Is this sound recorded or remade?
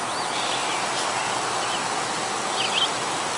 recorded